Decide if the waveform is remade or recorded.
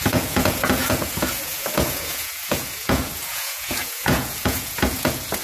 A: remade